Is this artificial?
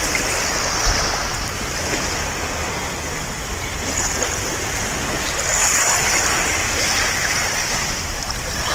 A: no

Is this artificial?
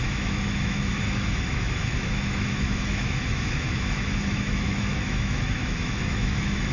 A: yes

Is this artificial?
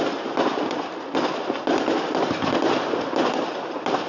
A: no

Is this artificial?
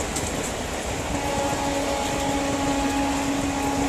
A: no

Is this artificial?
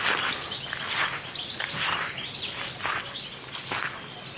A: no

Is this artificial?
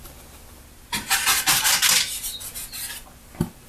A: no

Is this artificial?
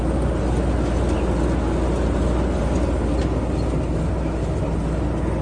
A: no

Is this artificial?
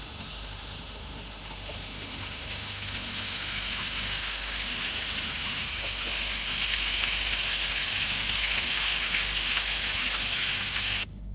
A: yes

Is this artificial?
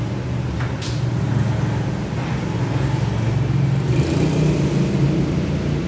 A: no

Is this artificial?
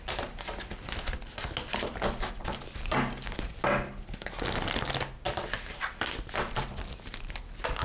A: no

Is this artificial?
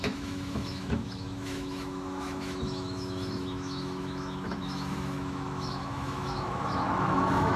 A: yes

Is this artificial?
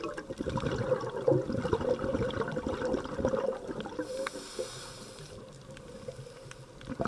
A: no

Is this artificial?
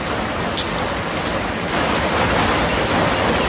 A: no